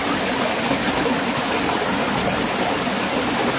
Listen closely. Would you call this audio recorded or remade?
recorded